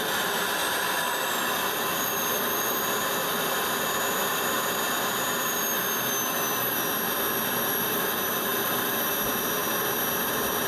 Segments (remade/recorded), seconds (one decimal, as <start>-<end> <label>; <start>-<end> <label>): 0.0-10.7 recorded